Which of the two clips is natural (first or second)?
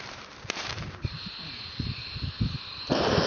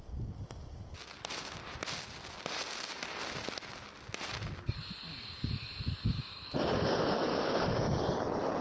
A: second